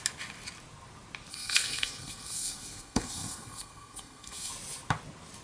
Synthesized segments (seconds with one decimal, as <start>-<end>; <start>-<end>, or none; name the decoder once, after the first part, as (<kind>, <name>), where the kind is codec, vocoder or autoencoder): 1.3-4.5 (codec, SNAC)